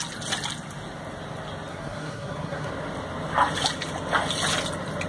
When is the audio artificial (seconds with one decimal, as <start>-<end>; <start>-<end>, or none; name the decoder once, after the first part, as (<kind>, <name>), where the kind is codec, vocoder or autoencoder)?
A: 1.7-2.7 (codec, SNAC)

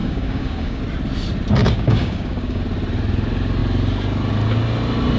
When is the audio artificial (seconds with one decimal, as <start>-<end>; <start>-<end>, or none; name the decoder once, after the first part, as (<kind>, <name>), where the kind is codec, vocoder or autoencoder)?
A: 0.0-0.8 (codec, DAC); 1.6-2.6

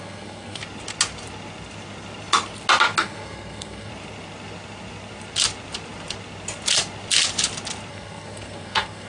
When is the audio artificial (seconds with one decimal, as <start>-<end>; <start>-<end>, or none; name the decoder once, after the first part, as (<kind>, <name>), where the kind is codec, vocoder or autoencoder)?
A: 0.0-0.6 (codec, SNAC); 3.0-3.9; 7.9-9.1

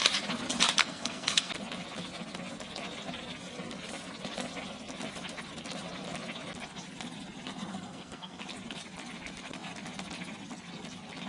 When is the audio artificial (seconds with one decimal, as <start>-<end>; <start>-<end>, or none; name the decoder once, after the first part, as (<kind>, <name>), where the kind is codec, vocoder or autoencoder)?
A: 0.8-1.5 (codec, SNAC); 7.7-8.4

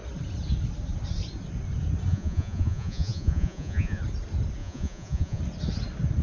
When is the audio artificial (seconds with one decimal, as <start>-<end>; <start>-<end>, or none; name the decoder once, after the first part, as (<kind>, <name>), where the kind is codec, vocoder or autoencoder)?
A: 2.1-4.0 (vocoder, Vocos); 4.6-5.4